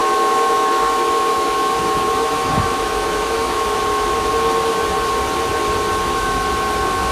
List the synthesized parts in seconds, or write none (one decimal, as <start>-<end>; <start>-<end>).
0.0-4.3; 6.0-6.5

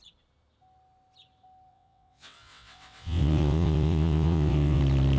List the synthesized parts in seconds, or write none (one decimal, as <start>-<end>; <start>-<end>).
1.7-4.8

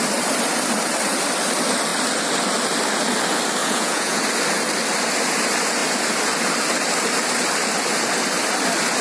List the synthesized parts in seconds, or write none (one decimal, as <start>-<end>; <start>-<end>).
3.6-4.2

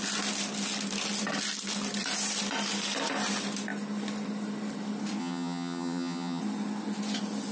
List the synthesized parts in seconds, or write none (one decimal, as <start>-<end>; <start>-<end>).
5.2-6.4

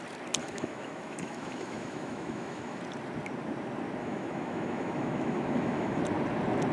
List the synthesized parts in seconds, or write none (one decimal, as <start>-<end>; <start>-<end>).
0.4-2.8; 4.0-6.0

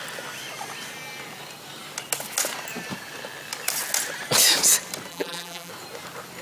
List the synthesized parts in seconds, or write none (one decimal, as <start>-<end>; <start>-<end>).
5.1-5.7